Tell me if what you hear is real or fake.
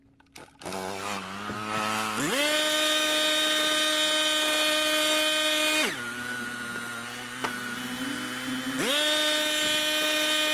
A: real